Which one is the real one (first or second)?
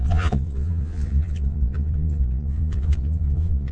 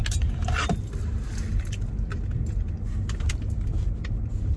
second